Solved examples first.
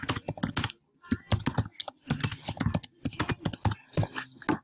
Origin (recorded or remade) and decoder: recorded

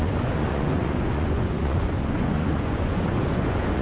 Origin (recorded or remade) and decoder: remade, vocoder, Vocos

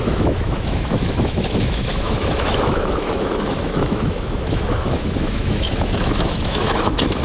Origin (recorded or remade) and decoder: remade, autoencoder, DAC-VAE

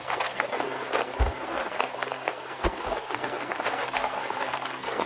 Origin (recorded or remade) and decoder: remade, codec, SNAC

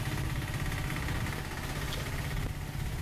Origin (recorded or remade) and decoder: recorded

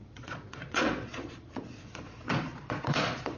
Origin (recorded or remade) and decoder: remade, vocoder, Vocos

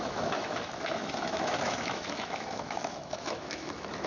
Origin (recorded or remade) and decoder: remade, autoencoder, DAC-VAE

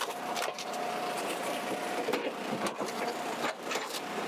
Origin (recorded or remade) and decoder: remade, vocoder, BigVGAN v2